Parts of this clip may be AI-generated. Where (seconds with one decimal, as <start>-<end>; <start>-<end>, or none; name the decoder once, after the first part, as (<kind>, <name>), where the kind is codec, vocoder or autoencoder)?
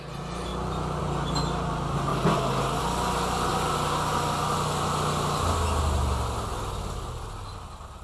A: 0.0-0.5 (vocoder, BigVGAN v2); 1.0-2.1; 2.8-3.5